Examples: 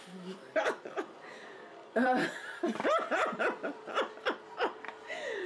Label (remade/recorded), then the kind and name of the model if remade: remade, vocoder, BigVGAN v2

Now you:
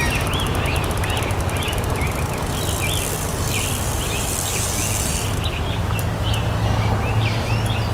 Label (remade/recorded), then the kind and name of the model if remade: recorded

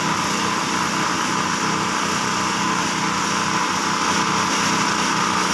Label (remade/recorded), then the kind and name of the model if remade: recorded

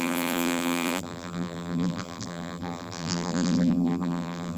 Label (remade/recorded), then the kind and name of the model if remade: remade, vocoder, BigVGAN v2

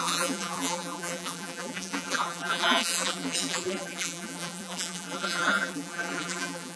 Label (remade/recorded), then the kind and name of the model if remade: remade, vocoder, BigVGAN v2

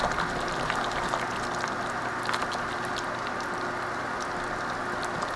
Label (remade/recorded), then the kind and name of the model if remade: recorded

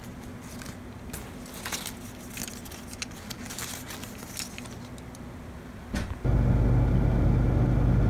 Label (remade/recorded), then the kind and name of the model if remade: recorded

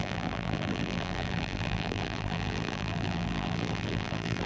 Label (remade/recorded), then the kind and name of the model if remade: remade, vocoder, BigVGAN v2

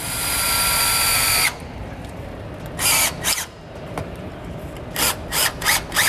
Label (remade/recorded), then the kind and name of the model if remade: remade, vocoder, BigVGAN v2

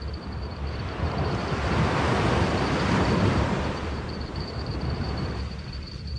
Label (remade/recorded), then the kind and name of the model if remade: remade, vocoder, BigVGAN v2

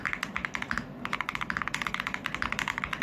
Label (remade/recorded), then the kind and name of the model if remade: recorded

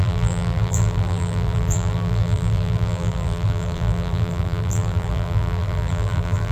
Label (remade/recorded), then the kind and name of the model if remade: remade, vocoder, BigVGAN v2